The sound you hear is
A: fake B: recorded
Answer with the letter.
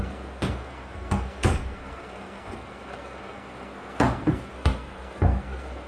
A